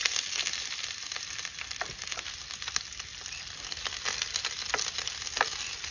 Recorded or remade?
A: recorded